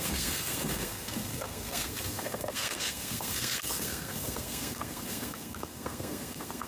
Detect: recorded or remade remade